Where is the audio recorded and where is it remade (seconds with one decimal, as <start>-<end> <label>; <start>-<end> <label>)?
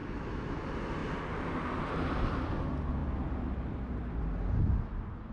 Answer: 0.0-0.6 remade; 0.6-5.3 recorded